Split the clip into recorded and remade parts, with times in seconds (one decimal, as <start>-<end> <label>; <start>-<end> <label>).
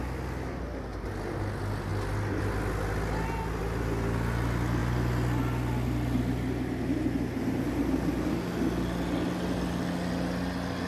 0.0-10.9 recorded